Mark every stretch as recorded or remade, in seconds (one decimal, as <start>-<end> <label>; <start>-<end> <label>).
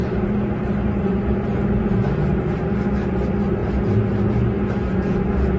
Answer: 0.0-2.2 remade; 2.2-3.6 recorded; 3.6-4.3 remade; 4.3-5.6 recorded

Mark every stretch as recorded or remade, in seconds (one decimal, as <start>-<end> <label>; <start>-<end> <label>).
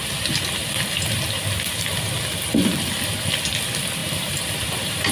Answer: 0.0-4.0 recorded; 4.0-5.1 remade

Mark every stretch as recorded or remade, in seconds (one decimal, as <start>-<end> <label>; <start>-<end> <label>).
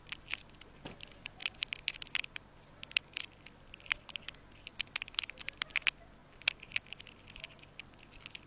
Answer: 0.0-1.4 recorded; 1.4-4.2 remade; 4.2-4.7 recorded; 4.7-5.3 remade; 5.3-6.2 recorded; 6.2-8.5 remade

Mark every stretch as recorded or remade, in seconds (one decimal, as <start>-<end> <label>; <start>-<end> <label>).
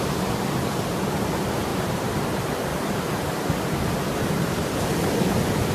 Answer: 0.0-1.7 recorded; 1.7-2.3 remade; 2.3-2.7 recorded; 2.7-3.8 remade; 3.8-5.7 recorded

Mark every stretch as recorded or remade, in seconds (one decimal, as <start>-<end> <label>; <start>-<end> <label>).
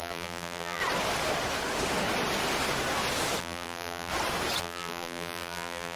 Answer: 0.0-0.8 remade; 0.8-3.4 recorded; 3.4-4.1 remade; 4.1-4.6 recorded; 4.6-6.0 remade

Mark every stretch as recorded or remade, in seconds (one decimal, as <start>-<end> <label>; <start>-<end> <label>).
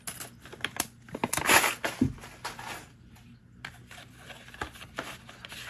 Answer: 0.0-5.7 recorded